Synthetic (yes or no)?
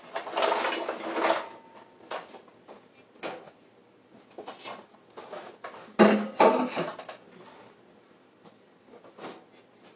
no